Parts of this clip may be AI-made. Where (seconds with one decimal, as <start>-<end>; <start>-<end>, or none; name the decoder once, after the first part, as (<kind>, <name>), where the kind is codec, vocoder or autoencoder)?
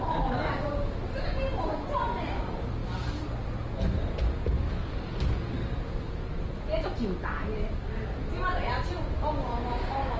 none